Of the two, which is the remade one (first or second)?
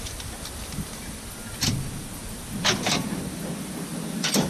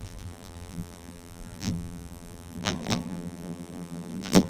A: second